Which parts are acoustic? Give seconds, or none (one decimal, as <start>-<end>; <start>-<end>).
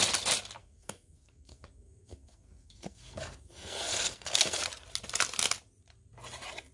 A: 0.0-0.6; 4.6-6.7